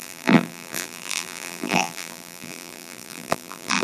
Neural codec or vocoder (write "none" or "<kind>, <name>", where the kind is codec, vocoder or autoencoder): vocoder, BigVGAN v2